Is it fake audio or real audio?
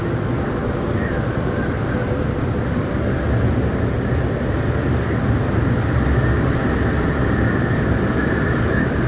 real